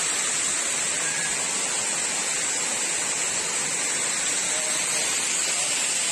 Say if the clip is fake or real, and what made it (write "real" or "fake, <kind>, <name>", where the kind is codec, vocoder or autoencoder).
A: real